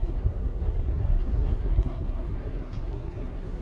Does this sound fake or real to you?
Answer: fake